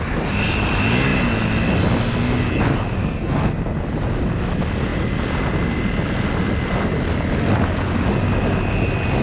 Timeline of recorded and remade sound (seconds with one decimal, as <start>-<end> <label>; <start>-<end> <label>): 0.0-3.0 recorded; 3.0-3.6 remade; 3.6-9.2 recorded